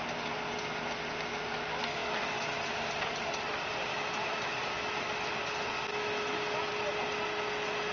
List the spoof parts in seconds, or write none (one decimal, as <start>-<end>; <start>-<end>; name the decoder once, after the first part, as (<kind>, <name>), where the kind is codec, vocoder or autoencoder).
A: 2.0-2.6 (autoencoder, DAC-VAE); 3.9-5.0; 5.9-6.7

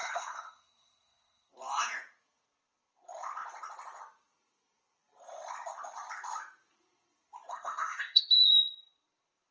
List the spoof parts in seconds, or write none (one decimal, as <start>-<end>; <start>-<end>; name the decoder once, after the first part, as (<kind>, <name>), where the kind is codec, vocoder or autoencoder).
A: 0.0-1.5 (codec, SNAC); 7.5-8.3

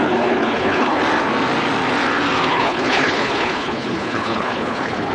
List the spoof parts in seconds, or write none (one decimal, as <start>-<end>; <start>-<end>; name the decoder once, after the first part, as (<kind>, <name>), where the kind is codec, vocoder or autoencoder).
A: 0.0-1.0 (codec, HILCodec); 2.5-5.1

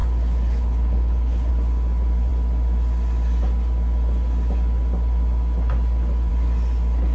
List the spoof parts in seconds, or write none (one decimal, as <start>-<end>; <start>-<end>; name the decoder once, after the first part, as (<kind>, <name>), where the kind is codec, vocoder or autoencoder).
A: 0.0-1.5 (codec, HILCodec)

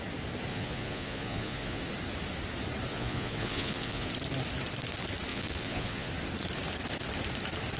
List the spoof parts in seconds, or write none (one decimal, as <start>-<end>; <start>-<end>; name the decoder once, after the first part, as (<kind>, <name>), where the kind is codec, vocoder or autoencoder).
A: 0.5-1.8 (vocoder, Vocos); 2.9-4.1; 5.3-6.1

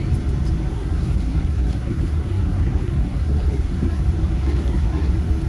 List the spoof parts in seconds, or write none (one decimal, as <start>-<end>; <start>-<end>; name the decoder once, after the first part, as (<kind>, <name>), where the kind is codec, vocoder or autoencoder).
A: 0.7-4.0 (codec, SNAC); 4.4-5.1